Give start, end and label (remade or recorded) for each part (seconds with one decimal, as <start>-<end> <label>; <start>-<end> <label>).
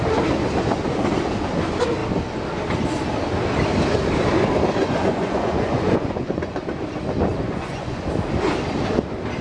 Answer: 0.0-4.8 recorded; 4.8-6.6 remade; 6.6-7.3 recorded; 7.3-8.1 remade; 8.1-9.4 recorded